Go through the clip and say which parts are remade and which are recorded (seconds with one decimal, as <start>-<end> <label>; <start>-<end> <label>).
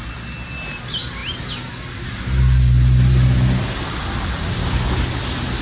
0.0-5.6 recorded